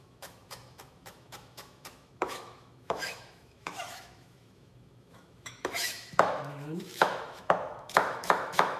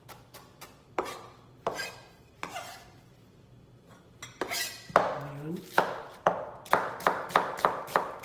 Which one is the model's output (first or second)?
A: first